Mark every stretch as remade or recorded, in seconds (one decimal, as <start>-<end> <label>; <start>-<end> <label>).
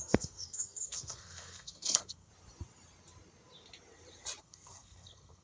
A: 0.0-2.3 remade; 2.3-4.4 recorded; 4.4-5.4 remade